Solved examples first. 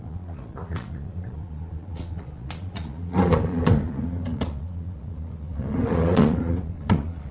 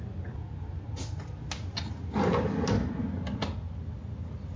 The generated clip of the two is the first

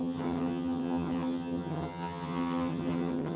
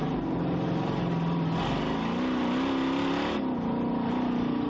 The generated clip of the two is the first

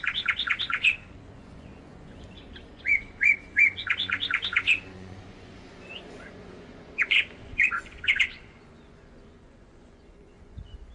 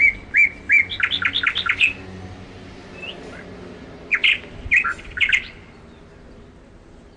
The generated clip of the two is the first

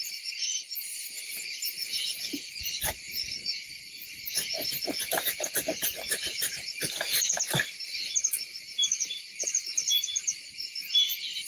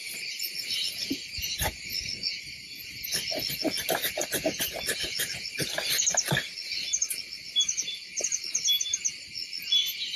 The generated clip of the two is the first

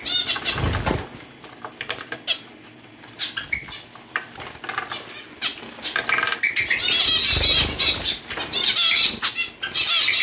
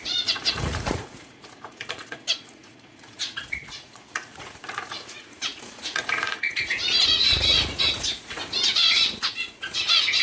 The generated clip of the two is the second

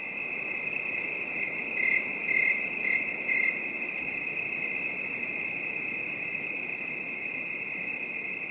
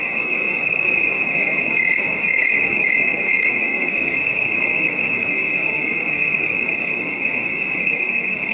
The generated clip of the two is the second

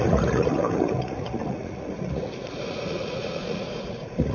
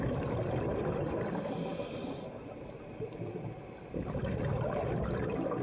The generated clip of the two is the first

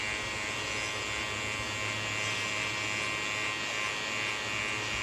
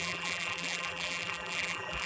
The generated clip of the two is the second